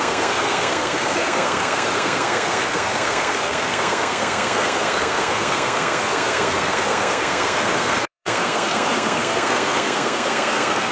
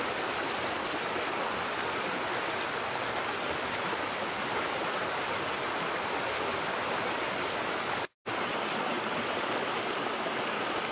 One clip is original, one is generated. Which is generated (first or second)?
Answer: first